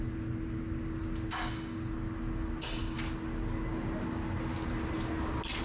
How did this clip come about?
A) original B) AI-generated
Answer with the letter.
A